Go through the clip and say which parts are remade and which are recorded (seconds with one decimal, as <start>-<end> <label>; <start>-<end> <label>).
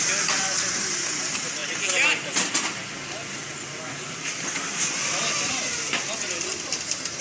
0.0-7.2 recorded